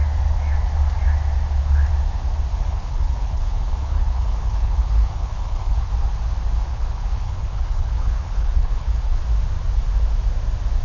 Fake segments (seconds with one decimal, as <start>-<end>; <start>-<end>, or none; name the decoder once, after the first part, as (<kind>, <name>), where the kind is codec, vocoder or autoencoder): 2.5-5.9 (codec, HILCodec); 6.7-9.2